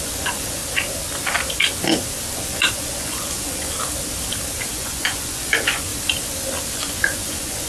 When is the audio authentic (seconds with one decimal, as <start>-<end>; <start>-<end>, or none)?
0.6-2.3; 3.7-4.7; 5.9-6.7